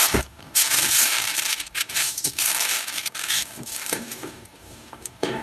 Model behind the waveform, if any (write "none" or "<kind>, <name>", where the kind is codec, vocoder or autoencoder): codec, DAC